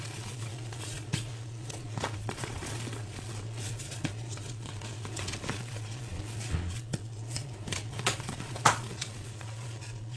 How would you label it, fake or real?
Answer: fake